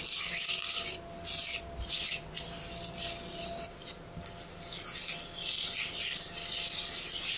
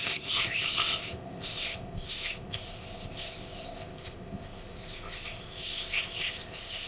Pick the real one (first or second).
first